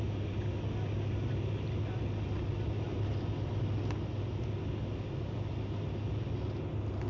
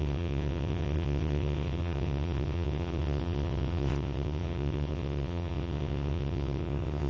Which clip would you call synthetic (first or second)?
second